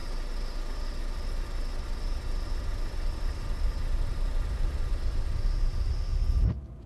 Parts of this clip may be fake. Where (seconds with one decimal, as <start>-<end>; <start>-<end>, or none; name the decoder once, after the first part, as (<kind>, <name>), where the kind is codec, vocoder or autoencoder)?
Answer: none